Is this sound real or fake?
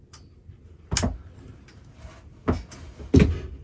real